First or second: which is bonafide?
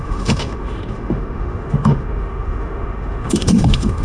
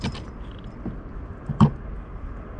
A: second